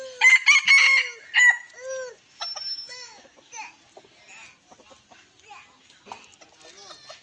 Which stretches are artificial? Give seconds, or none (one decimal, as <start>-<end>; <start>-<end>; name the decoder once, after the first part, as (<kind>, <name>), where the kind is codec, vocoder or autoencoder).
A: 2.7-3.5 (autoencoder, DAC-VAE)